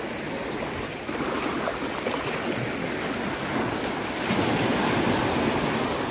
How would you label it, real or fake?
real